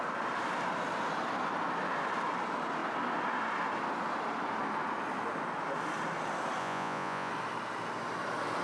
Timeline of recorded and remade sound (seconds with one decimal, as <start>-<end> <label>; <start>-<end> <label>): 0.0-6.6 recorded; 6.6-7.3 remade; 7.3-8.6 recorded